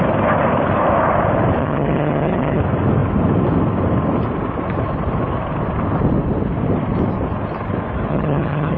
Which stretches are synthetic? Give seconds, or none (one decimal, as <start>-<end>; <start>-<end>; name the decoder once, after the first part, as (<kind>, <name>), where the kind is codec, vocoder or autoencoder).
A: 1.6-2.6 (vocoder, HiFi-GAN); 8.1-8.8